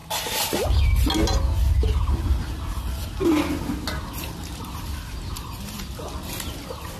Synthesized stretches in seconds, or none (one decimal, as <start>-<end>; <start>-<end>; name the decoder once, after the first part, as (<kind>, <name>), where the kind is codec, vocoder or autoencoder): none